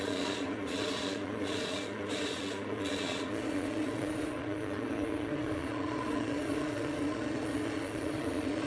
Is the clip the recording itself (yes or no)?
no